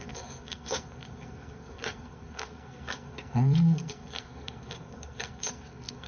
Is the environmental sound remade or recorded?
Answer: remade